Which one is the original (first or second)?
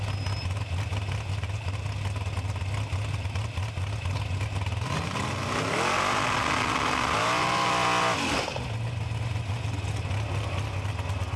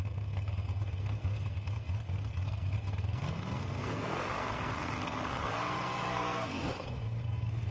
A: first